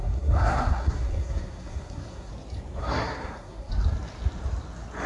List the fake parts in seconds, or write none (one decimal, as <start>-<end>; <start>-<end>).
0.0-2.3; 2.8-3.7